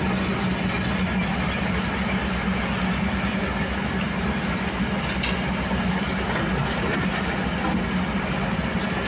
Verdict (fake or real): real